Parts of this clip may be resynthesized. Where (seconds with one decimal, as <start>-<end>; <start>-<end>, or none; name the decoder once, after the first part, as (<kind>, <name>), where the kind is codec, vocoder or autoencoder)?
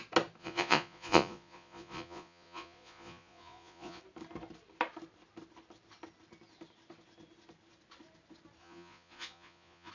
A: 0.4-4.0 (vocoder, Vocos); 8.6-9.9